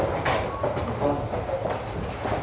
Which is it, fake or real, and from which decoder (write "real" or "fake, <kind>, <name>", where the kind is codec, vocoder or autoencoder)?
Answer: real